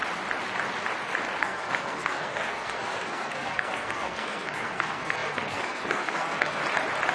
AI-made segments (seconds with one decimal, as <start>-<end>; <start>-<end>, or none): 1.4-6.6